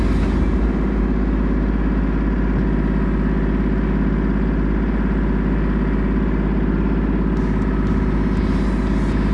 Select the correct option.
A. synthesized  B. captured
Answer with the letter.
B